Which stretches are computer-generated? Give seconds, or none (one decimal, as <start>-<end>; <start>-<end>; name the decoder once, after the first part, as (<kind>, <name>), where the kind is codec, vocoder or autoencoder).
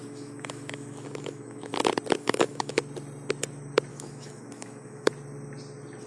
0.0-1.7 (autoencoder, DAC-VAE); 2.2-2.8; 3.9-5.1